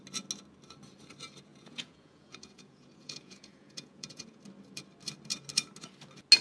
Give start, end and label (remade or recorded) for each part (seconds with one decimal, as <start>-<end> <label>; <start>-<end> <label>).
0.0-1.5 recorded; 1.5-4.4 remade; 4.4-6.4 recorded